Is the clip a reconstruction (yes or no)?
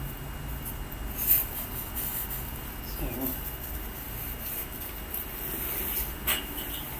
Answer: no